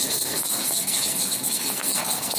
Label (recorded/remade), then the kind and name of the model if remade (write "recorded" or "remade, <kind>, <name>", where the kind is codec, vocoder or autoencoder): remade, codec, SNAC